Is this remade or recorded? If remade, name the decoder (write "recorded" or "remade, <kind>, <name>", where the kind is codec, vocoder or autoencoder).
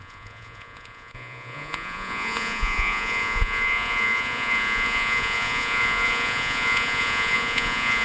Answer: remade, vocoder, Vocos